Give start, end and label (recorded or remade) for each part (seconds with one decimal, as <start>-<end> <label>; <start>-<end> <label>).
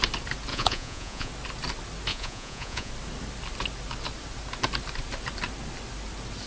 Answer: 0.0-0.5 recorded; 0.5-1.3 remade; 1.3-2.1 recorded; 2.1-2.9 remade; 2.9-6.5 recorded